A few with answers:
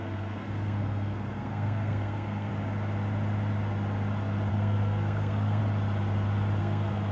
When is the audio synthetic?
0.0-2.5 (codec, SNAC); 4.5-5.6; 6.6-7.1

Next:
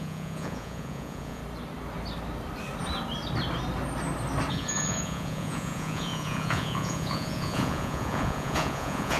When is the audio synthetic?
0.0-1.4 (vocoder, Vocos); 4.5-9.2